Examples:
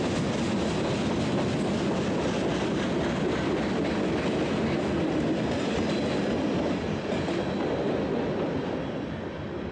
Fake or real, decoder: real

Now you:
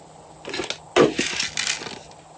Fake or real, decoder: real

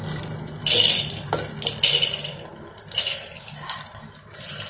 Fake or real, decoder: real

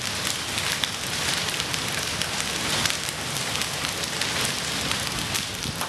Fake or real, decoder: real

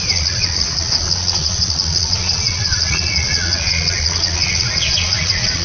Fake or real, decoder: fake, vocoder, Vocos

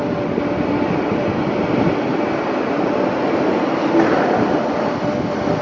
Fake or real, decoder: real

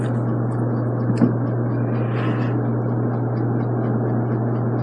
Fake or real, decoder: real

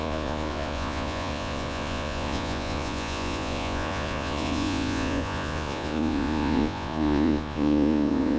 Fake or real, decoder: fake, vocoder, Vocos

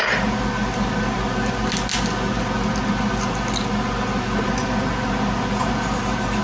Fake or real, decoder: real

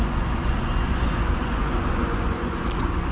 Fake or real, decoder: fake, vocoder, Vocos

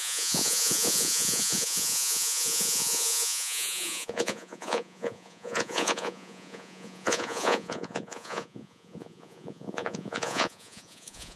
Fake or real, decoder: fake, vocoder, Vocos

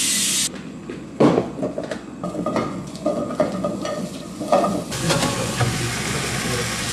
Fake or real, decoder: fake, vocoder, Vocos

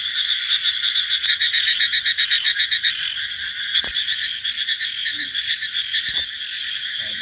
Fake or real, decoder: fake, vocoder, Vocos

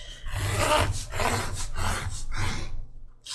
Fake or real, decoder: real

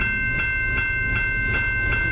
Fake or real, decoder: real